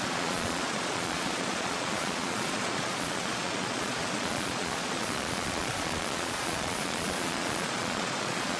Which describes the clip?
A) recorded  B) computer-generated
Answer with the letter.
B